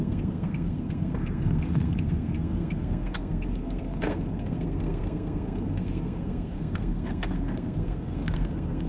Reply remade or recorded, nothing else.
remade